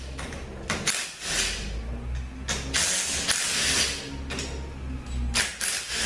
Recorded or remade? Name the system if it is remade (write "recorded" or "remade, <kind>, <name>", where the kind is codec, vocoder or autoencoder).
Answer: recorded